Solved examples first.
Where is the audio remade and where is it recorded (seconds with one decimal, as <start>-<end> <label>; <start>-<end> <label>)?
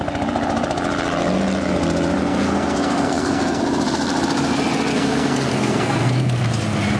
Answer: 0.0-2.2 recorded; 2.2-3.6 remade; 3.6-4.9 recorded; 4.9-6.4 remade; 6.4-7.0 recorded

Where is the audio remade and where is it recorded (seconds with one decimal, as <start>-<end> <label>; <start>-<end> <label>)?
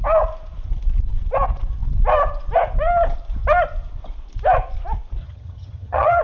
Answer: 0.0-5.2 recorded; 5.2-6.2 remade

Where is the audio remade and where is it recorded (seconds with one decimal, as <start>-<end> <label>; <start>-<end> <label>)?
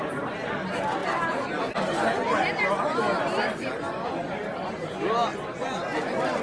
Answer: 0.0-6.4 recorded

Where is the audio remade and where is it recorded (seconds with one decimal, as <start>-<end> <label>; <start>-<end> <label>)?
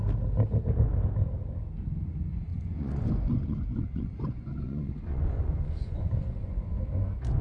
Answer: 0.0-2.5 recorded; 2.5-6.8 remade; 6.8-7.4 recorded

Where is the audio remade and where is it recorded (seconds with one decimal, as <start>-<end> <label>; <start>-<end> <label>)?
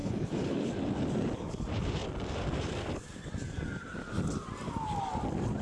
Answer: 0.0-0.7 remade; 0.7-5.6 recorded